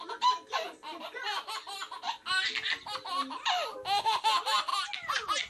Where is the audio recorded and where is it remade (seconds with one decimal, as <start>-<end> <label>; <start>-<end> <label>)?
0.0-0.7 remade; 0.7-2.8 recorded; 2.8-4.7 remade; 4.7-5.5 recorded